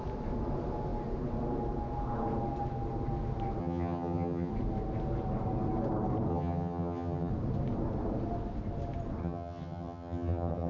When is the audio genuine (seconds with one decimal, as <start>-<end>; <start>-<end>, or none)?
0.0-3.6; 4.5-6.3; 7.3-9.2